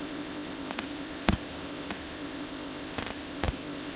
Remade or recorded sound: remade